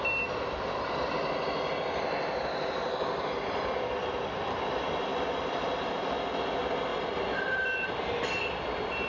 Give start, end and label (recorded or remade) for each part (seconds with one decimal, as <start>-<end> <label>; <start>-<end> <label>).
0.0-9.1 recorded